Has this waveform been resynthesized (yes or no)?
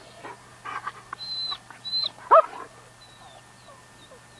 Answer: no